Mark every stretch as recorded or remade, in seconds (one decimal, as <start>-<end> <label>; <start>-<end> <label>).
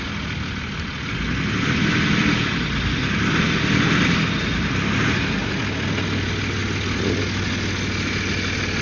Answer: 0.0-8.8 recorded